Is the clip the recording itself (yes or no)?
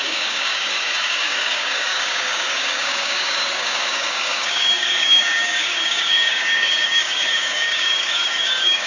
no